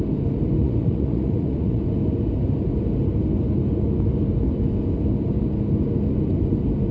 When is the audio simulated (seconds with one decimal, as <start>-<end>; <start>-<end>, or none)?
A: 0.6-1.8